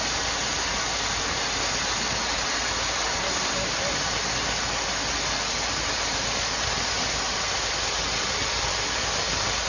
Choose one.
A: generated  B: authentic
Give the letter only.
B